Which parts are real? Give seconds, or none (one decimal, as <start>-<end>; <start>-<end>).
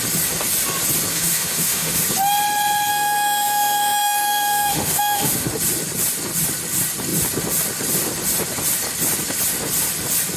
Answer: 0.0-1.1; 2.0-2.9; 5.5-10.4